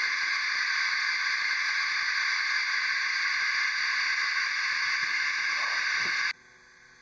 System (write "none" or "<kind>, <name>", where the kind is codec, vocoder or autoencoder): none